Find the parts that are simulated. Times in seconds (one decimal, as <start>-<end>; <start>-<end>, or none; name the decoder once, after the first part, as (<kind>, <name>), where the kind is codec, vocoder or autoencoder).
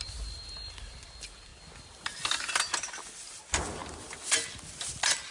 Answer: none